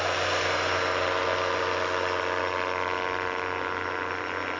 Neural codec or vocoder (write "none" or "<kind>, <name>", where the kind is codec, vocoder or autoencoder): none